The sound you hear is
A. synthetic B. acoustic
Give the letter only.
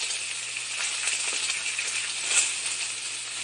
B